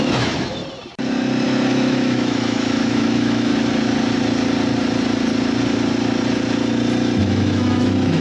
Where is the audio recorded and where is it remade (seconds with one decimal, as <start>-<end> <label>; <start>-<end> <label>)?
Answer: 0.0-0.6 remade; 0.6-1.7 recorded; 1.7-3.5 remade; 3.5-7.2 recorded; 7.2-8.2 remade